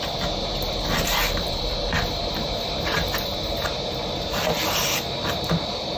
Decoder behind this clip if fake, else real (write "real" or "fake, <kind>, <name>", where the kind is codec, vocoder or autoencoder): fake, vocoder, BigVGAN v2